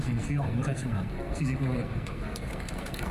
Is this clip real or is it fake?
fake